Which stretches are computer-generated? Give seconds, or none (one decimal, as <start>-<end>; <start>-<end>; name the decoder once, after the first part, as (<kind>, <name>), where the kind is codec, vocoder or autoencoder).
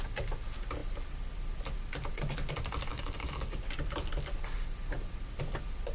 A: 2.9-3.6 (codec, DAC)